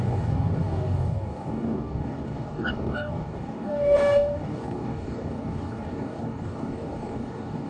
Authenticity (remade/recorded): remade